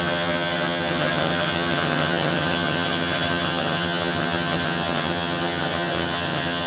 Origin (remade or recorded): remade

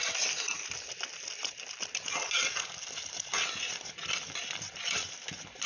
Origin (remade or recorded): recorded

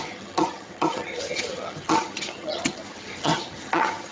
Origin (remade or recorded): remade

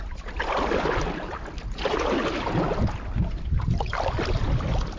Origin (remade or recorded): recorded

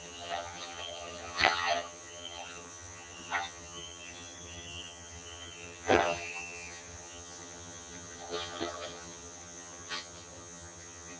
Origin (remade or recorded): remade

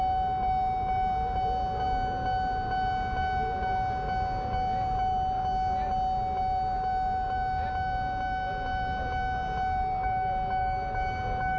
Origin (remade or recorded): recorded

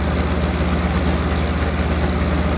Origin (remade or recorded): recorded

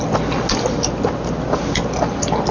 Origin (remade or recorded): recorded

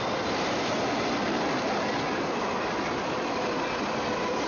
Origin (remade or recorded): recorded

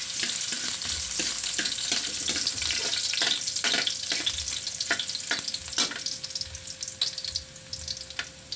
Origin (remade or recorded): recorded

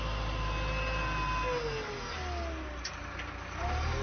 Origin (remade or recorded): recorded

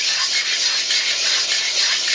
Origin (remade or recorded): recorded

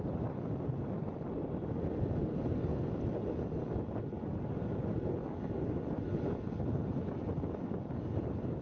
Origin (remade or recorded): recorded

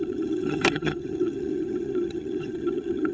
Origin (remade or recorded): remade